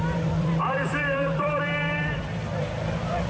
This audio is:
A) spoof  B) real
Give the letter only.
A